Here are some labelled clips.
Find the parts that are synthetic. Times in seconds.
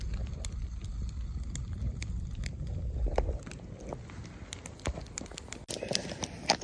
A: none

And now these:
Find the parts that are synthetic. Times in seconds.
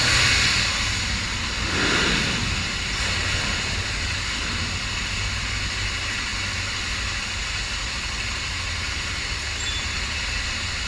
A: none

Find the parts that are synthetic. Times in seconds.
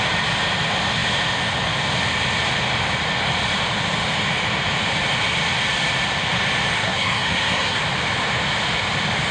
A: 6.8-7.8 (codec, SNAC)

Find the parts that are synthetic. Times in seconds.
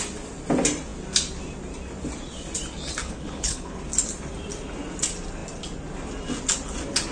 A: 3.0-3.8 (codec, HILCodec)